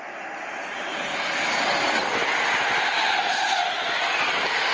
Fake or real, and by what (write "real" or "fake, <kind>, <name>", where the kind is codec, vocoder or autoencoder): real